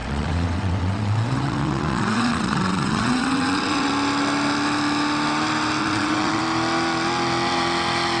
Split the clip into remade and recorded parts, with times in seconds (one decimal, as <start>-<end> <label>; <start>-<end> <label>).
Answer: 0.0-3.9 remade; 3.9-5.8 recorded; 5.8-6.4 remade; 6.4-8.2 recorded